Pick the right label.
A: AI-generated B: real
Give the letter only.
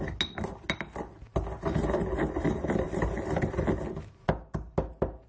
B